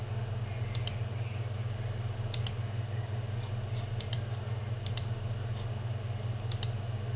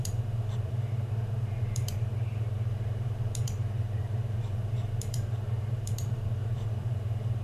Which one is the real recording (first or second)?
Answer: first